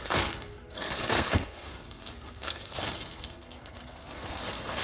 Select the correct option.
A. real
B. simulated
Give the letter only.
B